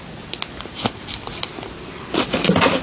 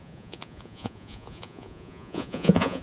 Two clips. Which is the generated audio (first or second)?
second